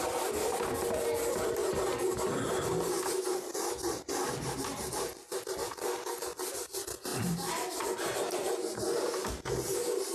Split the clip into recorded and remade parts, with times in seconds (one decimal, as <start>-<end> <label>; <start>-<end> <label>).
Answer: 0.0-7.1 recorded; 7.1-7.8 remade; 7.8-10.1 recorded